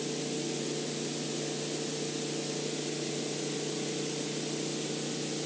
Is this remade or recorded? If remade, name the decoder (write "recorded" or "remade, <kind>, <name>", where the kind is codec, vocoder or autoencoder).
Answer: recorded